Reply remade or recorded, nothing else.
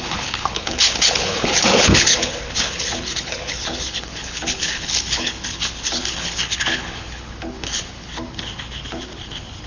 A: remade